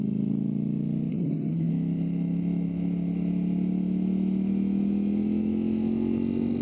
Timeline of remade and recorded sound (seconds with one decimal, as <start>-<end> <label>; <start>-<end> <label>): 0.0-1.1 recorded; 1.1-1.7 remade; 1.7-6.6 recorded